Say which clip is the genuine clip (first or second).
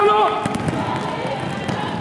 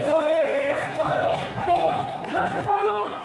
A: first